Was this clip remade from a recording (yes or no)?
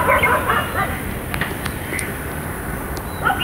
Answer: no